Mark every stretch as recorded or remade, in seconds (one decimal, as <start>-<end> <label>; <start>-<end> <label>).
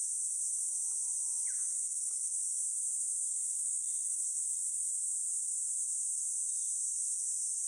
0.0-1.6 recorded; 1.6-2.4 remade; 2.4-3.3 recorded; 3.3-4.9 remade; 4.9-7.7 recorded